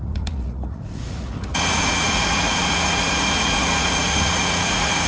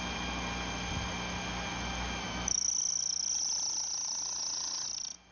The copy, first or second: first